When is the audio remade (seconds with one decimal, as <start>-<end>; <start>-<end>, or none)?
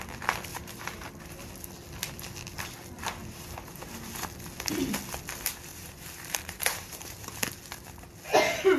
0.5-1.1; 3.2-3.8; 5.7-7.2